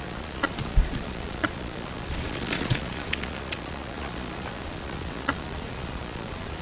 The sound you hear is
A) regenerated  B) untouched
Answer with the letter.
A